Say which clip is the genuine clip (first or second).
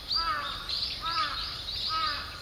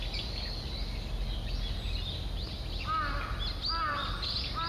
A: second